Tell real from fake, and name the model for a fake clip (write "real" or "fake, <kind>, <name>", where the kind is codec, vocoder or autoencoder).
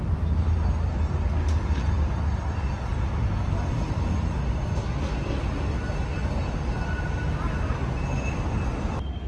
real